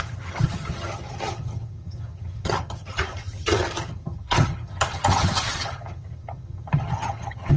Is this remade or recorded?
remade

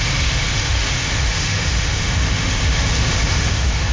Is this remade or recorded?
remade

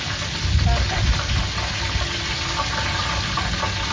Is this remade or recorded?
recorded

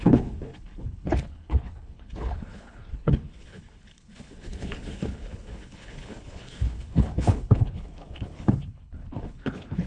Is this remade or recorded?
remade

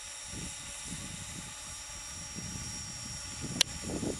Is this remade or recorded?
recorded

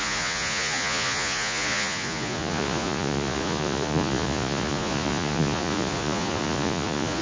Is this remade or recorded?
remade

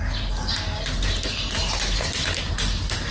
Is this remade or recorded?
recorded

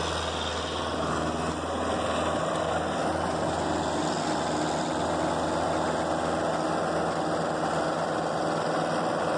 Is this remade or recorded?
recorded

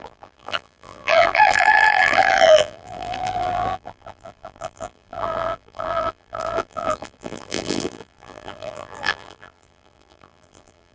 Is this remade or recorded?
remade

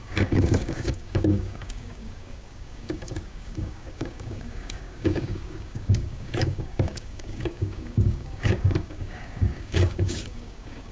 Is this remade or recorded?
remade